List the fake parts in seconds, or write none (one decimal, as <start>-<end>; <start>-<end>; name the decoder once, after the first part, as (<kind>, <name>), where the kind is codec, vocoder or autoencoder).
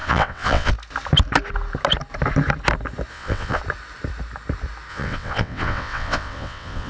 0.0-0.7 (vocoder, WaveNeXt); 3.1-3.6; 4.9-6.9